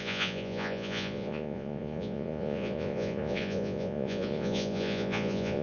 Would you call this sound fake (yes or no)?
yes